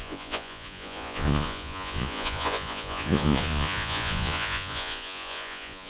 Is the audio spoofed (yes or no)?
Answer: yes